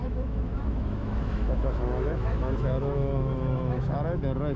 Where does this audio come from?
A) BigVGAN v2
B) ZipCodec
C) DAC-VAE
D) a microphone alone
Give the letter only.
C